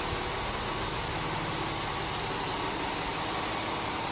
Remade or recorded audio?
recorded